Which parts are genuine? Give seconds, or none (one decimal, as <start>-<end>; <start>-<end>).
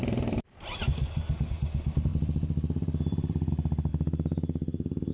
1.3-2.1; 3.5-3.9